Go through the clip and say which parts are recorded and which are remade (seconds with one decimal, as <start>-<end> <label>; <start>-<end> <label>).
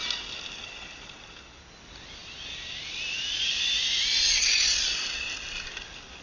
0.0-6.2 recorded